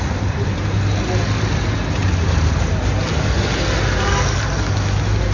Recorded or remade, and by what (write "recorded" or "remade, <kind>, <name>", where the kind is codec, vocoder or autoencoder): recorded